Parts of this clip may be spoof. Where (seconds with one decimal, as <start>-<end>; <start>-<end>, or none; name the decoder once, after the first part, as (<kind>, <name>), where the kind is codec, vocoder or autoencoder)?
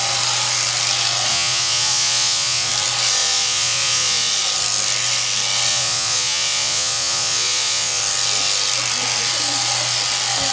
1.3-2.7 (vocoder, Vocos); 3.2-4.3; 5.7-8.0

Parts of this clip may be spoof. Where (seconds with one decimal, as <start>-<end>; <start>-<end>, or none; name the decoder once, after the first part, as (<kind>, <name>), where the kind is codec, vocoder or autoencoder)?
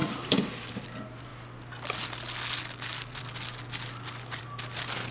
0.0-0.7 (vocoder, BigVGAN v2)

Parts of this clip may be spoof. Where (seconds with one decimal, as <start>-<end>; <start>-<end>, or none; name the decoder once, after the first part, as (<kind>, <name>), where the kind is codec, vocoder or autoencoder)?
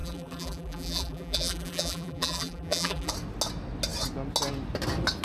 0.0-3.1 (vocoder, BigVGAN v2)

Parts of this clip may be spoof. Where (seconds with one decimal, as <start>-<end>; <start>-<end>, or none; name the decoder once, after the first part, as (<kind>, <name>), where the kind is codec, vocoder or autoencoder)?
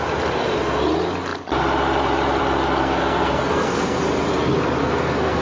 2.8-4.0 (codec, SNAC); 4.8-5.4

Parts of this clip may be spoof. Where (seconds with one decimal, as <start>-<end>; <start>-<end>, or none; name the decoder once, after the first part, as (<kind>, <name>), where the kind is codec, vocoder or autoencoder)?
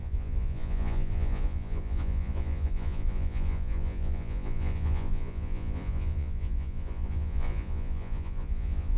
0.0-9.0 (vocoder, Vocos)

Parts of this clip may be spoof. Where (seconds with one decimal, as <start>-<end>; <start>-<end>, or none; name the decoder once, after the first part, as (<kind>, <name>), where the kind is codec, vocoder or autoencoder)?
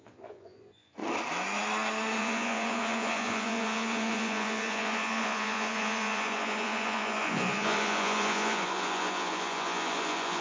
0.0-1.0 (vocoder, Vocos); 2.2-10.4